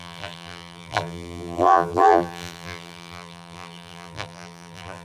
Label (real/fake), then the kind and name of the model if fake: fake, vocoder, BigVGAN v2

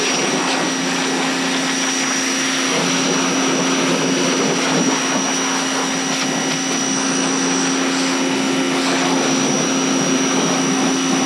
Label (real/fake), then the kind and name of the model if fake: real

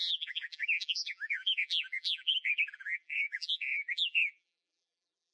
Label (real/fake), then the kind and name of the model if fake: fake, vocoder, BigVGAN v2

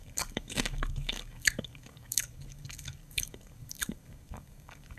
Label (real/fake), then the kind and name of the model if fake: fake, codec, DAC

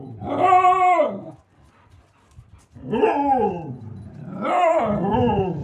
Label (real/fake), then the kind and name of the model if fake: real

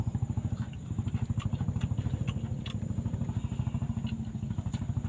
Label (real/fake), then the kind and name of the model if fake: real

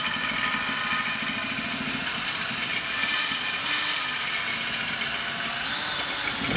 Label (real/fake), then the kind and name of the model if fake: real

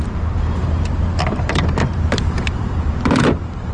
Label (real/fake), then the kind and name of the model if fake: fake, vocoder, BigVGAN v2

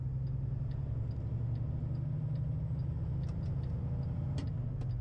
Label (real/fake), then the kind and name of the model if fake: real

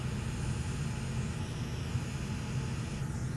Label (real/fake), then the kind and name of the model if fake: real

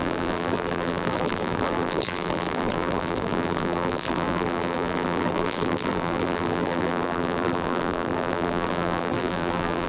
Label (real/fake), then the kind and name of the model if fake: fake, vocoder, BigVGAN v2